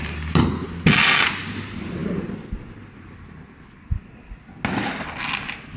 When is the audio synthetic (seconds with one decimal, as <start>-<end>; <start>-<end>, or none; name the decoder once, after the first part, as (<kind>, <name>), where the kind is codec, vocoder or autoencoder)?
none